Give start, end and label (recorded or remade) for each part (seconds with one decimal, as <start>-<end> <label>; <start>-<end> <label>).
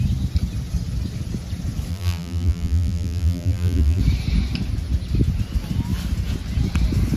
0.0-1.9 recorded; 1.9-4.0 remade; 4.0-7.2 recorded